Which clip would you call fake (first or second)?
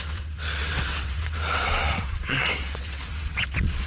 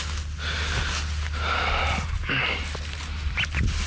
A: first